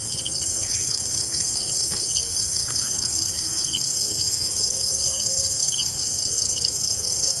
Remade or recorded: remade